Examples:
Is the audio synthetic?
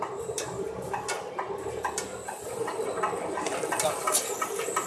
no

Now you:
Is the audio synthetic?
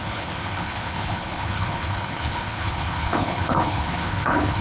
yes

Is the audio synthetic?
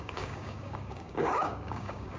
yes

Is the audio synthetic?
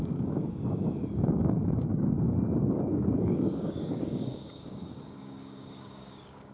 yes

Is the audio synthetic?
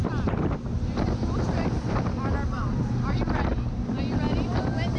no